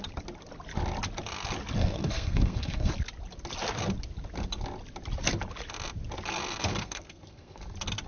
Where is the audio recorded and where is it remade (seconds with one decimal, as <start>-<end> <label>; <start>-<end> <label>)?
0.0-1.8 recorded; 1.8-2.9 remade; 2.9-6.7 recorded; 6.7-7.6 remade; 7.6-8.1 recorded